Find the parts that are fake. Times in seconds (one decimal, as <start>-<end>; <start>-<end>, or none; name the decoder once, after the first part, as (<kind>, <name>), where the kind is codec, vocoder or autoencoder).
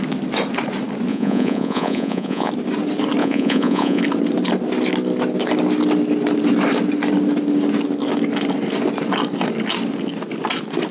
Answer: 1.1-2.5 (vocoder, Vocos); 3.2-4.0